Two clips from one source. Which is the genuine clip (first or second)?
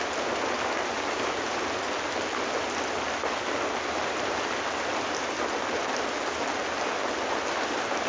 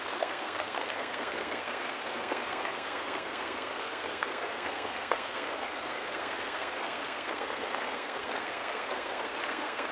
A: first